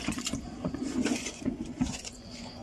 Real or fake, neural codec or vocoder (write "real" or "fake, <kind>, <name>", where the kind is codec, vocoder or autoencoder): fake, vocoder, Vocos